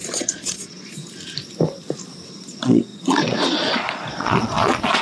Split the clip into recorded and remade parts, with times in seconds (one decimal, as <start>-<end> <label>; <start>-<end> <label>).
0.0-1.0 remade; 1.0-2.3 recorded; 2.3-5.0 remade